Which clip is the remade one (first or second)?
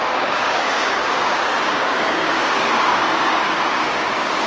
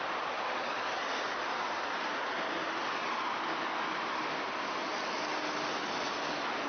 first